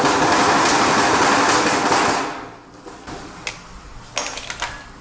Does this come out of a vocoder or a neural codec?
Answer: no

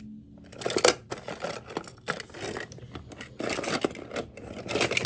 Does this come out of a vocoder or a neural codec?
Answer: no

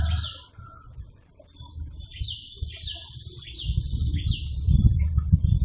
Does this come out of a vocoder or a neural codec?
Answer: no